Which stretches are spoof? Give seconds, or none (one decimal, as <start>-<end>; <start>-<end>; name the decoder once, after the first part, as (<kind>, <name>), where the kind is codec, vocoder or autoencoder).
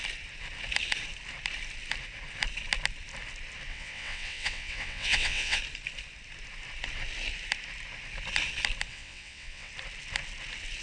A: 3.7-5.6 (vocoder, WaveNeXt); 8.9-9.7